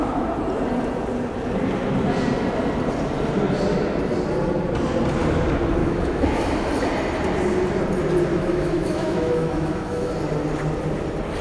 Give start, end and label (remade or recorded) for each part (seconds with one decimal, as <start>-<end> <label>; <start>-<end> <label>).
0.0-5.8 recorded; 5.8-6.4 remade; 6.4-8.3 recorded; 8.3-10.1 remade; 10.1-11.4 recorded